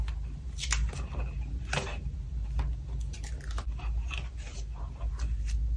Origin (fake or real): real